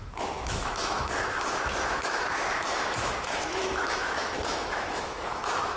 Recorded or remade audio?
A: remade